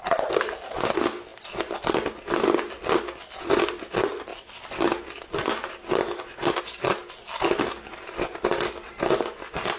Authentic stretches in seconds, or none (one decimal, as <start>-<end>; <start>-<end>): 0.0-9.8